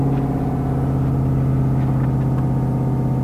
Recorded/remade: recorded